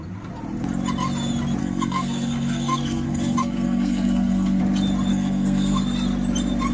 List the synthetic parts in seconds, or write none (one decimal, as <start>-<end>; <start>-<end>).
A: 1.6-4.6; 5.1-5.8